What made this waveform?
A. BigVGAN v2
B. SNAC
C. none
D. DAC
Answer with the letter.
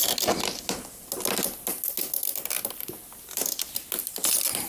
C